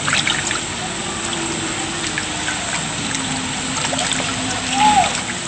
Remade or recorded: recorded